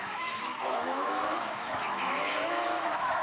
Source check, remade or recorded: remade